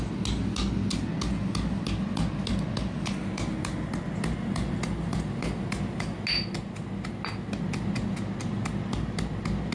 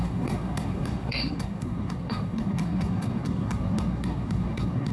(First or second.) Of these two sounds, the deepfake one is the second